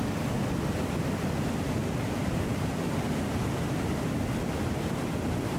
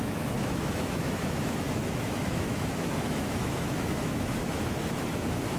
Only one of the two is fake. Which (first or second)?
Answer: second